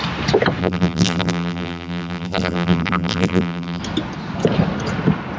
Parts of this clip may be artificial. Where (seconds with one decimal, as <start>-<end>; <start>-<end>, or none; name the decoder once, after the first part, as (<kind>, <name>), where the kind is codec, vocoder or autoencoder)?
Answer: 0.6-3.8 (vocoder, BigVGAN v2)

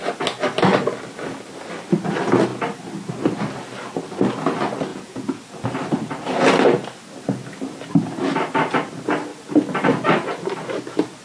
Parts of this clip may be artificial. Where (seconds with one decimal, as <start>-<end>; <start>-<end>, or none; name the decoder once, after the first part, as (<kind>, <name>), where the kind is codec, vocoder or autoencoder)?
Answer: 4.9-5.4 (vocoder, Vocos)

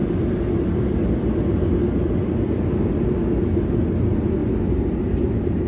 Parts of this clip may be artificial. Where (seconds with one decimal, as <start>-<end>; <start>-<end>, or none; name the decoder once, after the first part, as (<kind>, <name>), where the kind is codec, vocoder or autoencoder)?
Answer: none

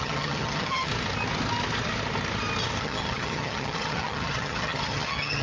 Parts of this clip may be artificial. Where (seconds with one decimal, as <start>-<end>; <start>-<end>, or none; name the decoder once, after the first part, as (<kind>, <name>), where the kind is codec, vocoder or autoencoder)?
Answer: 0.0-0.9 (vocoder, HiFi-GAN); 2.8-5.4

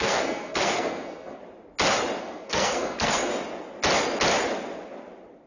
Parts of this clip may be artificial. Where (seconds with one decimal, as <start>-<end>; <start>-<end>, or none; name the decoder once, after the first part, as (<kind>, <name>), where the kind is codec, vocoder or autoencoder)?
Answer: 0.0-1.4 (codec, SNAC); 2.2-3.3